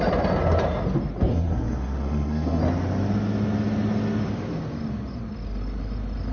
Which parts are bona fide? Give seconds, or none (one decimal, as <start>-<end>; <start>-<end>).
0.0-1.3; 2.6-6.3